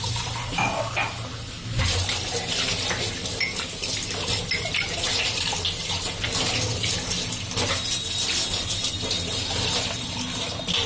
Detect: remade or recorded recorded